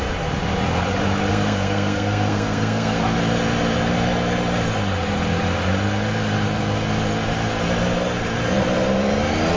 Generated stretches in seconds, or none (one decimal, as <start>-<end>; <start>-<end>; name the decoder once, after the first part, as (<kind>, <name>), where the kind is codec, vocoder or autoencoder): 1.3-3.0 (codec, SNAC)